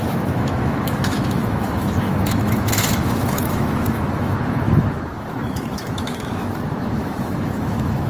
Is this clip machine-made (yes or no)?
yes